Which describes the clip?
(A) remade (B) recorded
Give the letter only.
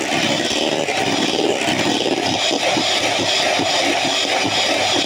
B